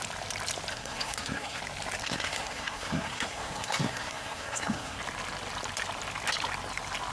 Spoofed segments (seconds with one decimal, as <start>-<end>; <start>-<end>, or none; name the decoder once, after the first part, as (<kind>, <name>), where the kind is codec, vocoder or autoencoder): 0.7-1.6 (codec, SNAC); 2.0-5.0